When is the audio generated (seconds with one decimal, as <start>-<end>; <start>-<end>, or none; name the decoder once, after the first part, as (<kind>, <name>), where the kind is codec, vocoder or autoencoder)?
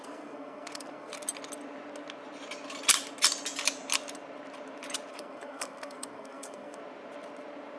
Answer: 0.0-1.1 (codec, SNAC); 5.1-6.8